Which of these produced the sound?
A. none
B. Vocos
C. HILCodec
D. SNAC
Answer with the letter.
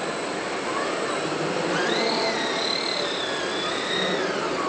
A